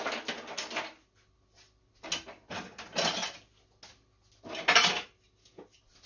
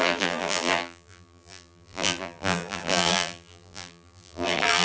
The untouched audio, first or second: first